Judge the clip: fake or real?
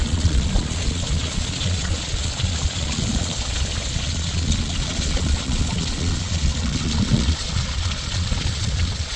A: fake